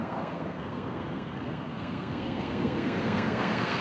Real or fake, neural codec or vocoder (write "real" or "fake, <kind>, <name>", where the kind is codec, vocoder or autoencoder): fake, codec, SNAC